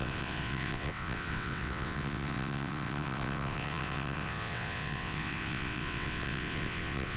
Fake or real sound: fake